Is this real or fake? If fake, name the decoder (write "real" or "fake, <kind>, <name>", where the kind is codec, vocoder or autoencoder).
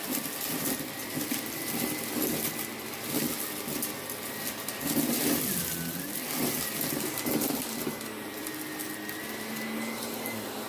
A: real